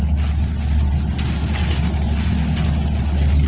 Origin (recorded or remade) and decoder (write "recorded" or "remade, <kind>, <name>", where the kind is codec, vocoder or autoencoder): recorded